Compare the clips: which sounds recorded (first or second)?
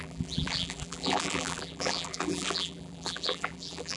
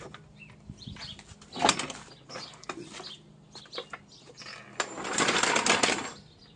second